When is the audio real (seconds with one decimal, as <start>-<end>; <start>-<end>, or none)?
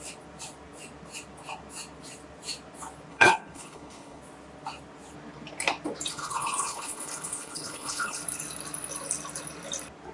0.0-3.1; 4.2-6.1; 8.2-10.1